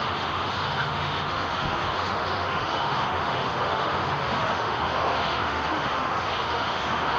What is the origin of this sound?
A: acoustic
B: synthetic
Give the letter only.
B